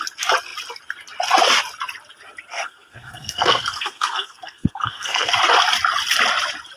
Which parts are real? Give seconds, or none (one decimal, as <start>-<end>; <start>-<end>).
0.0-2.5; 5.4-6.8